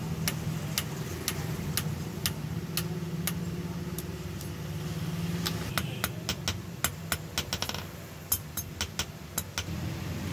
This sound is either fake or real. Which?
real